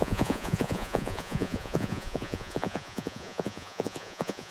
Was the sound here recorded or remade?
remade